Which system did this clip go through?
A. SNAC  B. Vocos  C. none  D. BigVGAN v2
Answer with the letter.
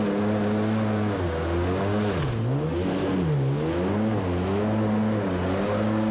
C